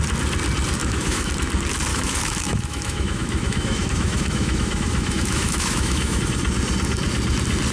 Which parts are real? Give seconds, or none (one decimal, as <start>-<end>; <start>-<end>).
0.0-0.8; 1.3-1.9; 6.2-7.7